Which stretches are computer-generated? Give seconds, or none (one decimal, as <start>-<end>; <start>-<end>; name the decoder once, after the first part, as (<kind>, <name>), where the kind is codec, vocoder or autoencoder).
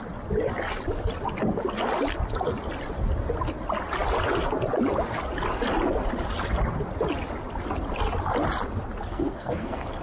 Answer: 9.1-10.0 (codec, SNAC)